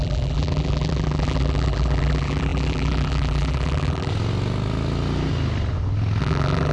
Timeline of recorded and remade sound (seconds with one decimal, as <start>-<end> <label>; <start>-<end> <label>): 0.0-4.1 remade; 4.1-6.2 recorded; 6.2-6.7 remade